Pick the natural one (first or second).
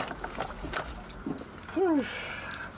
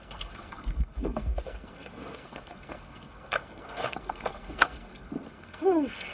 first